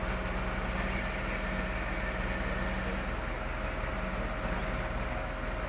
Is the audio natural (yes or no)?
yes